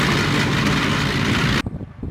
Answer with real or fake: real